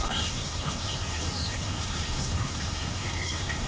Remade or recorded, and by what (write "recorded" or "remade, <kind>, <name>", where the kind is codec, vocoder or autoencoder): remade, codec, SNAC